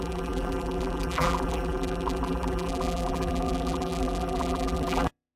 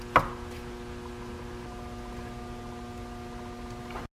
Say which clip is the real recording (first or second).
second